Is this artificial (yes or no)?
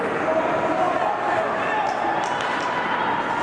no